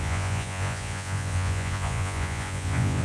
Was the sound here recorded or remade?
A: remade